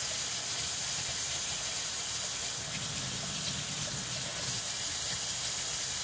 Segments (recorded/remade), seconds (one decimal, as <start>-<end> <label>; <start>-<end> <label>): 0.0-6.0 recorded